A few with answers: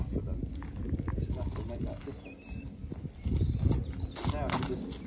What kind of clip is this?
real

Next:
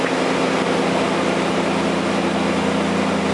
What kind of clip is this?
real